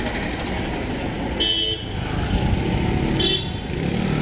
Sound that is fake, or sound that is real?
real